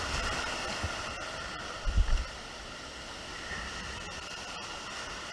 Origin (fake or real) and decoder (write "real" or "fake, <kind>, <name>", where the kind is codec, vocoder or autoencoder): real